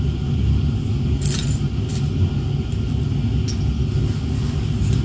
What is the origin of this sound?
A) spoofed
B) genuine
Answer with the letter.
B